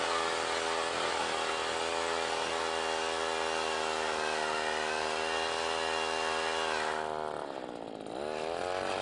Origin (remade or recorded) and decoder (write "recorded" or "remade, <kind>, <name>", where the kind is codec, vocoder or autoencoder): recorded